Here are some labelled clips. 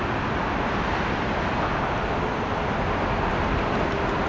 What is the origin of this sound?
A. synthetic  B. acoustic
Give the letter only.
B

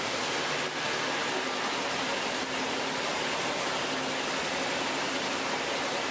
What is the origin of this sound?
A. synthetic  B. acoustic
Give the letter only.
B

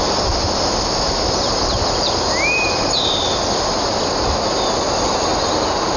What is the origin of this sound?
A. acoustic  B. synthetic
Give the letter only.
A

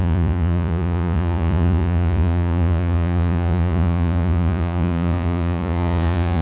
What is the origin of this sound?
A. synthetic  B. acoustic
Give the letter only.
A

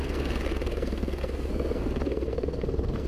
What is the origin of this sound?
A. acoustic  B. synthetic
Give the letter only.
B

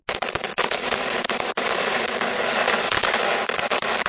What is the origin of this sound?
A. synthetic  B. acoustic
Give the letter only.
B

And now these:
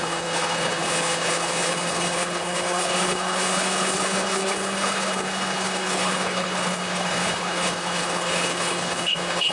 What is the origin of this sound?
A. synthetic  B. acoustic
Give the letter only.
A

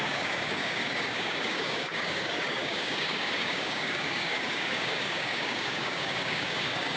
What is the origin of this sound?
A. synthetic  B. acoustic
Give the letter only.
A